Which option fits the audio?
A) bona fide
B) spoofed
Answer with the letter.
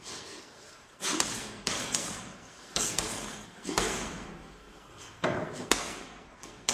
B